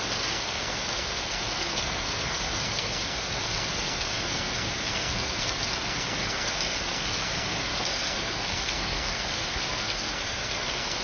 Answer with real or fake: fake